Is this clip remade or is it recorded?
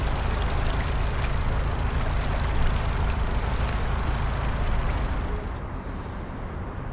recorded